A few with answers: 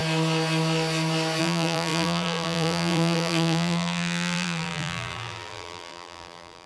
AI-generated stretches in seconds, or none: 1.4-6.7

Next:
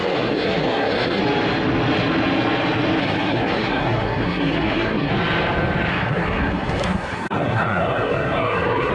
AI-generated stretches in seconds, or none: 0.0-1.2; 3.0-5.1; 5.9-8.9